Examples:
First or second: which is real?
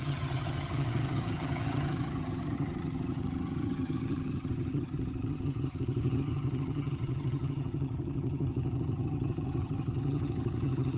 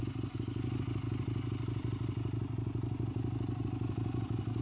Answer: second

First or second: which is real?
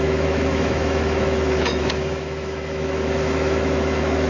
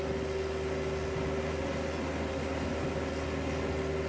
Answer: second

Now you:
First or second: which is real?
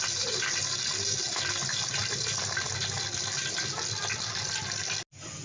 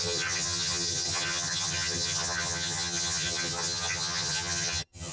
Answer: first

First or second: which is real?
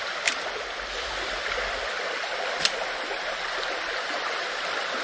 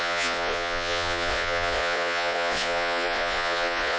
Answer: first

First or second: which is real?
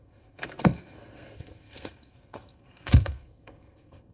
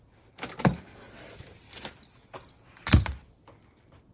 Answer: second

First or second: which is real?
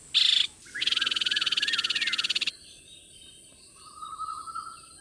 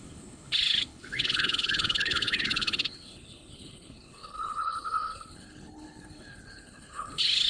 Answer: first